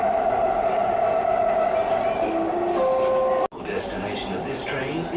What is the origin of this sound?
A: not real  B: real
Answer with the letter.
B